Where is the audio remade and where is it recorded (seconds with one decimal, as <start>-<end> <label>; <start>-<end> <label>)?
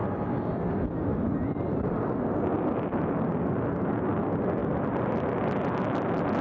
0.0-4.6 recorded; 4.6-5.2 remade; 5.2-6.4 recorded